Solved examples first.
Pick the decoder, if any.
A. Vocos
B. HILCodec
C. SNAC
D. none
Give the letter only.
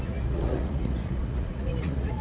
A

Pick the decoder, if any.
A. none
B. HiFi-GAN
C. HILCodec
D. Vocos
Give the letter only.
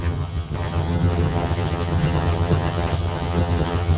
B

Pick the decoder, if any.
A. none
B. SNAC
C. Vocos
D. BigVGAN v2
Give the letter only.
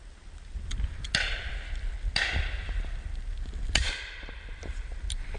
A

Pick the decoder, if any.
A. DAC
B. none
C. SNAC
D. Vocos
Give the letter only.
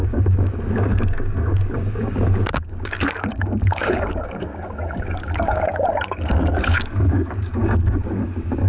A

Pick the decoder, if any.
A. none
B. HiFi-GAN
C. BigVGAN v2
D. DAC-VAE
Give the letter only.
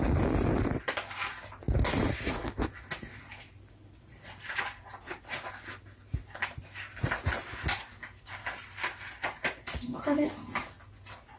A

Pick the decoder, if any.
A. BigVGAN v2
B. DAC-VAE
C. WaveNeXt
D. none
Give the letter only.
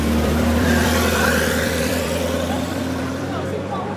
A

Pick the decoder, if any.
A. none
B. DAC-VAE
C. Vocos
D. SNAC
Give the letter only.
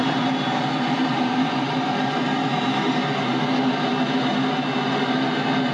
A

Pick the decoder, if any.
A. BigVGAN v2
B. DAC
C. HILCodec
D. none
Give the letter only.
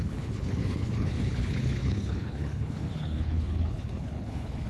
C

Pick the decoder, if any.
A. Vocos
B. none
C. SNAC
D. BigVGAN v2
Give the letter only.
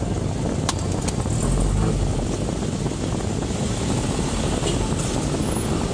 B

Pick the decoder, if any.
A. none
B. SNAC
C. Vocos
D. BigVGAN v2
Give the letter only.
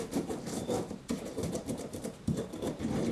D